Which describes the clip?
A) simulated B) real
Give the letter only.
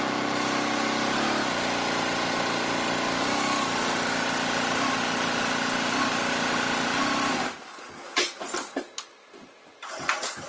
B